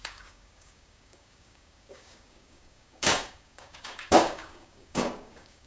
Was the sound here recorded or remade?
remade